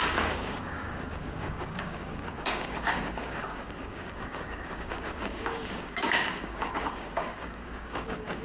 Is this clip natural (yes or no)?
no